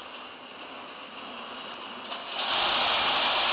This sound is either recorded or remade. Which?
recorded